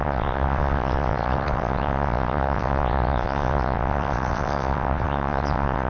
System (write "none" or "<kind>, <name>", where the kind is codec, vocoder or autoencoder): vocoder, WaveNeXt